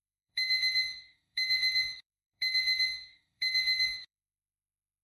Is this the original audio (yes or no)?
no